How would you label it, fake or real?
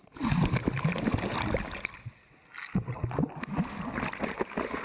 real